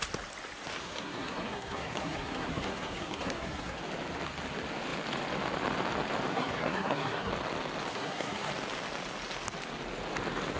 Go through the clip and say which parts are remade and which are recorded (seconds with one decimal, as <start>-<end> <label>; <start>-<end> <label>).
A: 0.0-0.8 recorded; 0.8-3.8 remade; 3.8-6.3 recorded; 6.3-7.3 remade; 7.3-7.9 recorded; 7.9-8.5 remade; 8.5-10.6 recorded